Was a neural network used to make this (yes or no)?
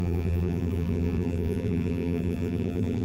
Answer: yes